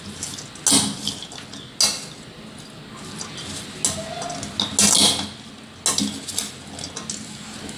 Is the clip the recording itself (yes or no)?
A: yes